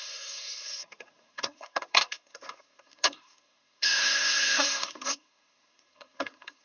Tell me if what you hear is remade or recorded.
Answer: remade